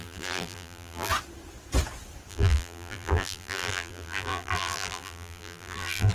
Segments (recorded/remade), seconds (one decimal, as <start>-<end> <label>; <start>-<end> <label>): 0.0-1.1 remade; 1.1-2.3 recorded; 2.3-6.1 remade